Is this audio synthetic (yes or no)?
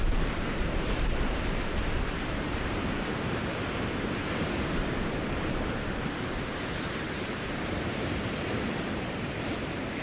yes